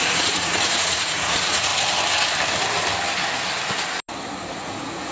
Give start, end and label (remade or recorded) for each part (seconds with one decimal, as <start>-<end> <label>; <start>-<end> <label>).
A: 0.0-1.7 remade; 1.7-4.5 recorded; 4.5-5.1 remade